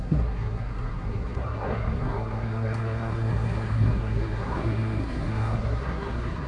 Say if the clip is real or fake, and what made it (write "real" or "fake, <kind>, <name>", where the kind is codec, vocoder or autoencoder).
fake, codec, SNAC